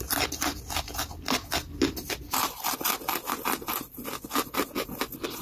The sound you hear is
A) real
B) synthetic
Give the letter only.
A